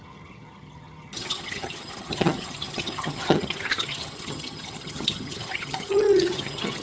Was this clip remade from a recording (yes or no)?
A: yes